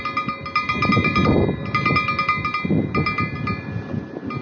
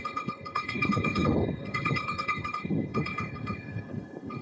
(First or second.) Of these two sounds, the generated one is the second